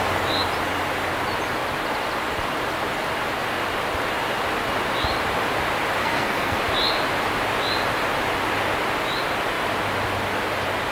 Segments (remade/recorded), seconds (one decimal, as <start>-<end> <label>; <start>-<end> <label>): 0.0-6.0 recorded; 6.0-6.6 remade; 6.6-10.9 recorded